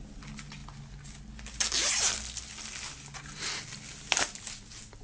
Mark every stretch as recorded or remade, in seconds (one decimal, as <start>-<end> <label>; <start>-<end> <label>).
0.0-5.0 recorded

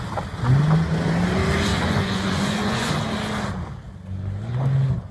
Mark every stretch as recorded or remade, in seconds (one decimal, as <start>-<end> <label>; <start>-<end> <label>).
0.0-1.7 recorded; 1.7-2.9 remade; 2.9-5.1 recorded

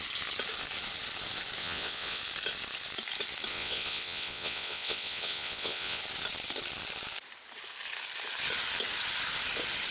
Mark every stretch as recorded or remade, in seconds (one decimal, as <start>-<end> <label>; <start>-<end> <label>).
0.0-1.6 recorded; 1.6-2.2 remade; 2.2-3.5 recorded; 3.5-6.0 remade; 6.0-9.9 recorded

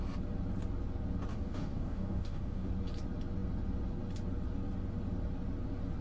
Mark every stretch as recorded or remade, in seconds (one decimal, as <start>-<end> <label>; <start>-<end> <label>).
0.0-1.3 recorded; 1.3-2.7 remade; 2.7-6.0 recorded

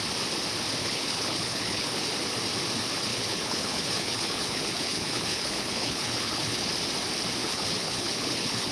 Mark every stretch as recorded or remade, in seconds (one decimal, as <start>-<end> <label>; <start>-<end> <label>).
0.0-0.8 recorded; 0.8-2.1 remade; 2.1-3.1 recorded; 3.1-6.7 remade; 6.7-7.4 recorded; 7.4-8.7 remade

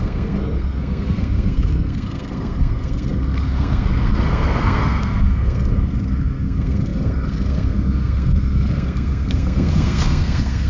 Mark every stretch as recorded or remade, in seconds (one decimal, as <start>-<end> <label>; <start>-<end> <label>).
0.0-10.7 remade